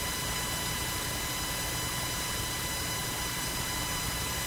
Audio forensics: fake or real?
fake